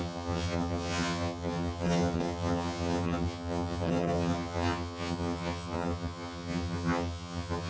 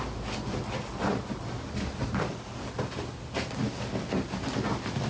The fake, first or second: first